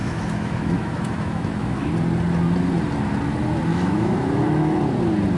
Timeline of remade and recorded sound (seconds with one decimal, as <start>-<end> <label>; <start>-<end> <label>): 0.0-1.9 remade; 1.9-3.7 recorded; 3.7-4.8 remade; 4.8-5.4 recorded